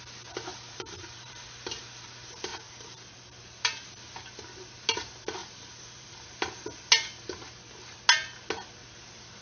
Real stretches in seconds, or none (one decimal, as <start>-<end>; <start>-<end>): 0.0-0.5; 1.8-2.5; 3.6-5.4; 6.2-9.4